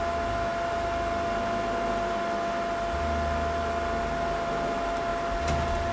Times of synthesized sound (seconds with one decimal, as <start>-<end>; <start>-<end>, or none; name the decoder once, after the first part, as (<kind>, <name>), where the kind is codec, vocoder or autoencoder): none